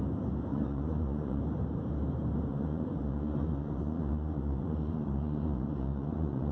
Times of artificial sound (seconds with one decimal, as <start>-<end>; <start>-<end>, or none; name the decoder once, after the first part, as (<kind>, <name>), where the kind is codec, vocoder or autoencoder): 0.5-1.4 (vocoder, Vocos); 2.5-6.5